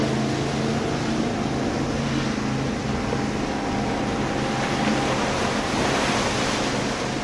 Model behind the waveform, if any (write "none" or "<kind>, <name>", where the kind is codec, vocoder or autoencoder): none